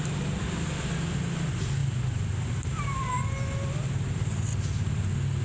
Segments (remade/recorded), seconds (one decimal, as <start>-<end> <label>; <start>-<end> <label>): 0.0-1.8 recorded; 1.8-3.1 remade; 3.1-4.5 recorded; 4.5-5.0 remade; 5.0-5.4 recorded